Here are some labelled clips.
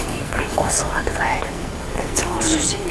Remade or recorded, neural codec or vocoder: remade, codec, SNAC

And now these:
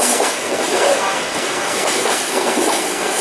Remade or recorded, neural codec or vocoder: remade, codec, SNAC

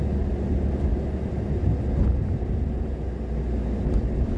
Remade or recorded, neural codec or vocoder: recorded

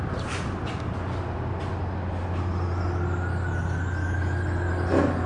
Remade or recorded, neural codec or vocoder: recorded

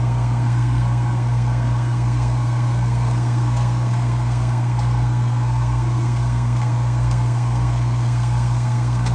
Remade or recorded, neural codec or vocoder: remade, codec, SNAC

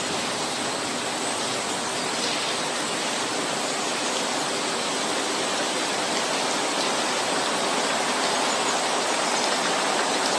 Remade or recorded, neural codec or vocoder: recorded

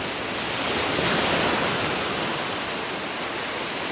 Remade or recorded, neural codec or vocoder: recorded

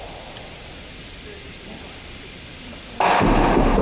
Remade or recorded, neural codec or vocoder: recorded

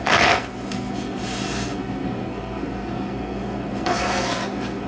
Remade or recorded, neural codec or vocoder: remade, codec, SNAC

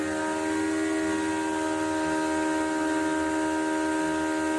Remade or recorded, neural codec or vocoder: recorded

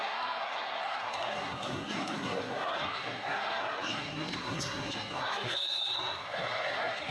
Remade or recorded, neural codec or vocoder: remade, codec, SNAC